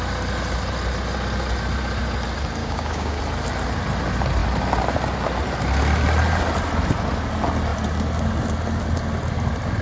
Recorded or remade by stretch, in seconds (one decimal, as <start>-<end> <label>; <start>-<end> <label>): 0.0-2.6 recorded; 2.6-3.2 remade; 3.2-9.8 recorded